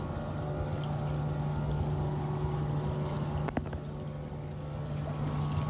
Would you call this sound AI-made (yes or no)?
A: no